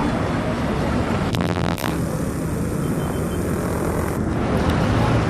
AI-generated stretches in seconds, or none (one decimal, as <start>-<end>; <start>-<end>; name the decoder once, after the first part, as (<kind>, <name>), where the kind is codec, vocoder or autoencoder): 1.3-1.9 (vocoder, BigVGAN v2)